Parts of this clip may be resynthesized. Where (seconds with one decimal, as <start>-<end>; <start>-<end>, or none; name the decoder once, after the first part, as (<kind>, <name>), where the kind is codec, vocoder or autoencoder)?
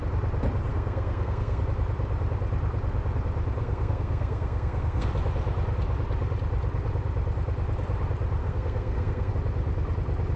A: 0.7-1.6 (codec, SNAC); 3.6-5.1; 8.4-9.3